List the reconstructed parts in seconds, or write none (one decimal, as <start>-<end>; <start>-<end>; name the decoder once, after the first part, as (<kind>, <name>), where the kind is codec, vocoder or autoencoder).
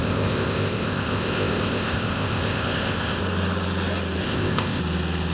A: 0.0-3.2 (codec, ZipCodec); 4.2-4.8